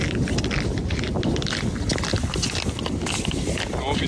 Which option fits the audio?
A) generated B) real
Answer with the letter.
B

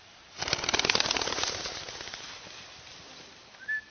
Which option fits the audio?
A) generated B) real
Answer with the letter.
B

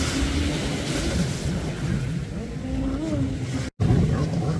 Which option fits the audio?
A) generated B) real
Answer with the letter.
B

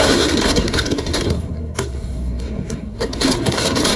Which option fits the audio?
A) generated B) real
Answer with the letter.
A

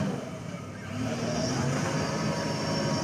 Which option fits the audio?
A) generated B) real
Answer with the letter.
B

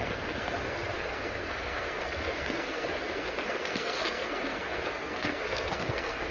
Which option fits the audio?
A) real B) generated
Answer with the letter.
B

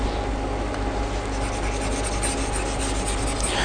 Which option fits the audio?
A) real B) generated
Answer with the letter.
A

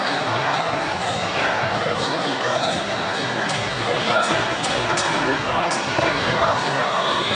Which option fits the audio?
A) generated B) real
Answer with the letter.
A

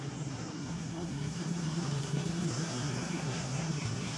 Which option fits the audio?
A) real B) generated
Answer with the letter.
B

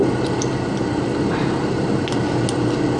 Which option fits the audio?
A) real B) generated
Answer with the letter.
A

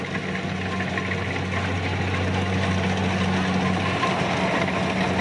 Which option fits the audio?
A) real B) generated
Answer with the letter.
A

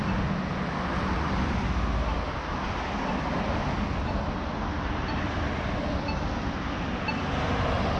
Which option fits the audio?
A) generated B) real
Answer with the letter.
B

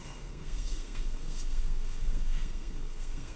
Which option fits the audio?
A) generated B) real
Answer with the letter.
A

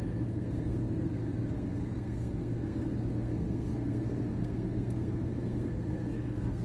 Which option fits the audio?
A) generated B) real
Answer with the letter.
A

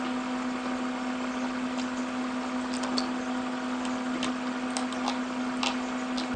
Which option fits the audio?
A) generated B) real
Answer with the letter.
B